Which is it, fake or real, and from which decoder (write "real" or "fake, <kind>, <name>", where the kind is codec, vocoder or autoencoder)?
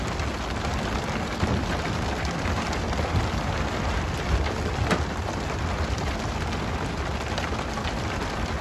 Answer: real